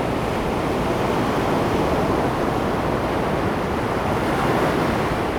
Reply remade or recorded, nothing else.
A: recorded